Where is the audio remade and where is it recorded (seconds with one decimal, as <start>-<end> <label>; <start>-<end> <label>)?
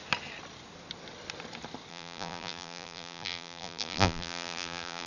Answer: 0.0-1.9 recorded; 1.9-5.1 remade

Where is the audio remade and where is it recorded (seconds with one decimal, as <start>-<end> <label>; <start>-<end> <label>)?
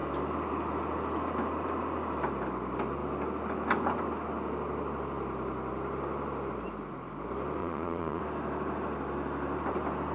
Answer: 0.0-7.6 recorded; 7.6-8.2 remade; 8.2-10.1 recorded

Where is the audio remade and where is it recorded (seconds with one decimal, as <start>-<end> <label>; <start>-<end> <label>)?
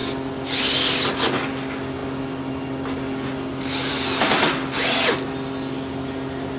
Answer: 0.0-6.6 recorded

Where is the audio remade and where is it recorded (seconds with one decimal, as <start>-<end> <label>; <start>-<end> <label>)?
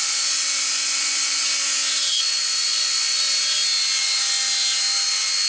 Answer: 0.0-0.7 recorded; 0.7-1.4 remade; 1.4-2.1 recorded; 2.1-3.2 remade; 3.2-5.5 recorded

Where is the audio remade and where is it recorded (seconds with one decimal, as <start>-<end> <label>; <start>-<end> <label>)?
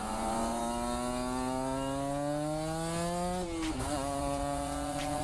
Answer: 0.0-0.6 remade; 0.6-3.7 recorded; 3.7-5.2 remade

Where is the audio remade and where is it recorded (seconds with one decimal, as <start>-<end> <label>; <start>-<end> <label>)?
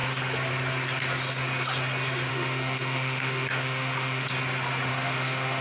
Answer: 0.0-2.3 recorded; 2.3-4.3 remade; 4.3-4.9 recorded; 4.9-5.6 remade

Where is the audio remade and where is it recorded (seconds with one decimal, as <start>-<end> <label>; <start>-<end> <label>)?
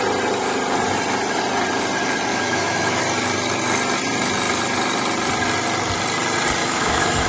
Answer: 0.0-2.3 recorded; 2.3-3.0 remade; 3.0-6.6 recorded; 6.6-7.3 remade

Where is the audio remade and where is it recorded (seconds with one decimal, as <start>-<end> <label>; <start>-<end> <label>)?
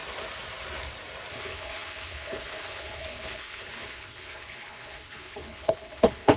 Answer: 0.0-1.3 recorded; 1.3-6.4 remade